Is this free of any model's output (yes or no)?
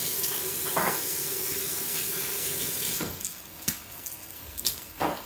no